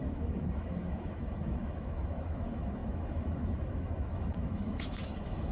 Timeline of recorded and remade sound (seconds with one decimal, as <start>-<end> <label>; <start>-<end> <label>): 0.0-5.5 remade